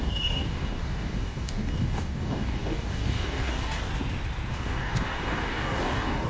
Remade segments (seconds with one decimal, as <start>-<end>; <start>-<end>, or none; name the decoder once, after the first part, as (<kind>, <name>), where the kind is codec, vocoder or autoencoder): 0.0-3.9 (codec, DAC); 4.5-6.3